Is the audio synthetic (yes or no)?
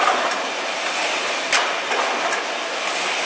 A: no